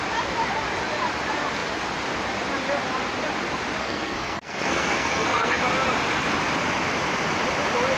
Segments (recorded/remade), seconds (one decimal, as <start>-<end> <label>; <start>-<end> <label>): 0.0-3.8 recorded; 3.8-5.6 remade; 5.6-8.0 recorded